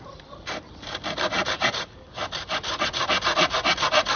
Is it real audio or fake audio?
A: real